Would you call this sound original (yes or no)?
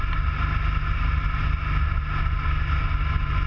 yes